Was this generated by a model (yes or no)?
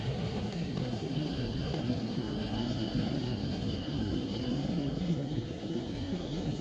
yes